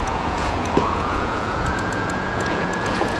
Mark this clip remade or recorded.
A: remade